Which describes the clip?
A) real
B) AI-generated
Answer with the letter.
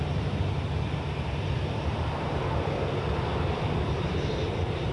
A